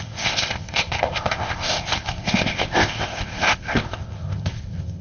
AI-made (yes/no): yes